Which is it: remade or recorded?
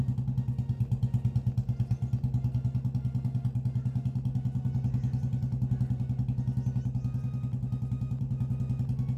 recorded